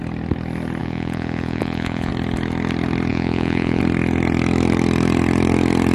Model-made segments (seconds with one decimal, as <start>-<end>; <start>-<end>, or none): 0.8-2.1; 3.1-3.8